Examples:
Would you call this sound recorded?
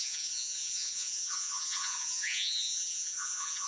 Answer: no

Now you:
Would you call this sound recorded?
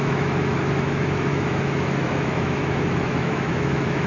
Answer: no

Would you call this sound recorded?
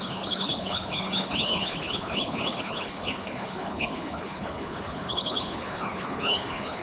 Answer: no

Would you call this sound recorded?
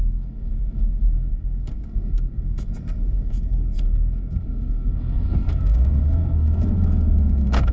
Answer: no